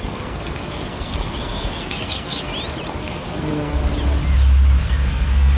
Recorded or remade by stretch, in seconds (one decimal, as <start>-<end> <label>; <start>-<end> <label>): 0.0-2.5 remade; 2.5-3.0 recorded; 3.0-3.8 remade; 3.8-4.8 recorded; 4.8-5.6 remade

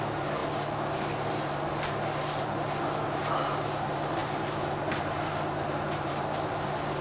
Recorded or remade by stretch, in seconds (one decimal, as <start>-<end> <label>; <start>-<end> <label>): 0.0-7.0 remade

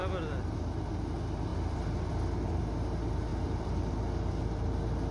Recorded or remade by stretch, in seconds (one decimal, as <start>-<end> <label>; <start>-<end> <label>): 0.0-1.5 recorded; 1.5-2.6 remade; 2.6-3.3 recorded; 3.3-5.1 remade

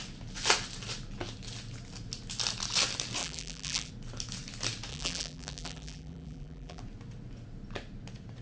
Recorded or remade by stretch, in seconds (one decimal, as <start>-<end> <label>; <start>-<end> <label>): 0.0-3.2 recorded; 3.2-3.9 remade; 3.9-4.9 recorded; 4.9-6.8 remade; 6.8-8.4 recorded

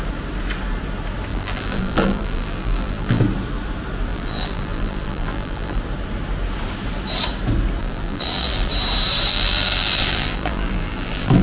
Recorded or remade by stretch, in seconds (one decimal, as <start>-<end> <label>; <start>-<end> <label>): 0.0-1.3 recorded; 1.3-3.2 remade; 3.2-4.1 recorded; 4.1-5.8 remade; 5.8-7.8 recorded; 7.8-8.7 remade; 8.7-9.3 recorded; 9.3-11.4 remade

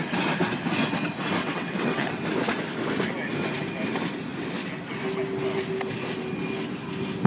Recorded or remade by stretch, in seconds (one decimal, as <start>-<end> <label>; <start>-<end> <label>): 0.0-1.4 recorded; 1.4-2.2 remade; 2.2-7.3 recorded

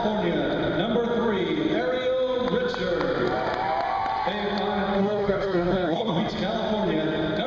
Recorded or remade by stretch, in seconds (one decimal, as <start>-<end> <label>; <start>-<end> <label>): 0.0-5.0 recorded; 5.0-6.2 remade; 6.2-7.5 recorded